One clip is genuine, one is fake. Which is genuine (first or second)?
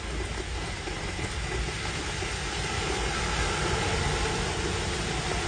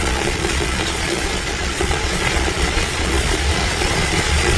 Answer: first